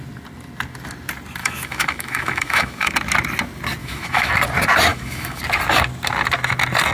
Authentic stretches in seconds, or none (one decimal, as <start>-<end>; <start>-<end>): 0.0-1.4; 2.9-3.8; 4.3-4.9; 5.4-6.9